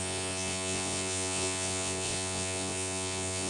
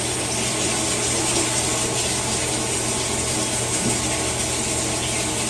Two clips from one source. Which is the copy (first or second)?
first